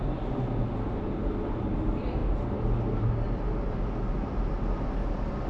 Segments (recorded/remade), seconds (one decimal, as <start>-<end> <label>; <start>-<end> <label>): 0.0-5.5 recorded